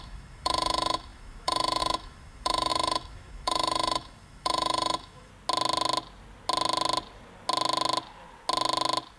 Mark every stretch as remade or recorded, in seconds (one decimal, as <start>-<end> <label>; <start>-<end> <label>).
0.0-5.3 remade; 5.3-9.2 recorded